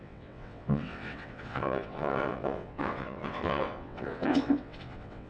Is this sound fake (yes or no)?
yes